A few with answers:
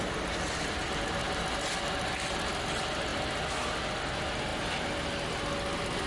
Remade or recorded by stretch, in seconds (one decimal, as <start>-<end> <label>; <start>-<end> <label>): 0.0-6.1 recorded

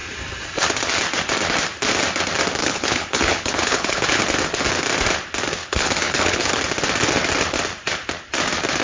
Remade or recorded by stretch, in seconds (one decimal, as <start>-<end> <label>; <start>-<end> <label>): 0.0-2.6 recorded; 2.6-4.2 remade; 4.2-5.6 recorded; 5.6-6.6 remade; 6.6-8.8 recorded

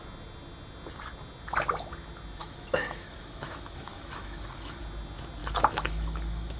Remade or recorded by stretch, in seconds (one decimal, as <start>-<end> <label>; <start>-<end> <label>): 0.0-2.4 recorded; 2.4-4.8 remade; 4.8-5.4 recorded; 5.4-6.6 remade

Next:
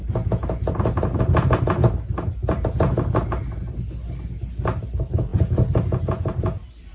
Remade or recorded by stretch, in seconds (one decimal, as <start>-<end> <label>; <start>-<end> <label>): 0.0-6.9 recorded

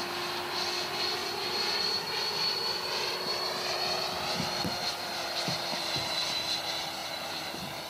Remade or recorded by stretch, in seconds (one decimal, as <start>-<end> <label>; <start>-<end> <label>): 0.0-1.2 recorded; 1.2-5.8 remade; 5.8-7.0 recorded; 7.0-7.9 remade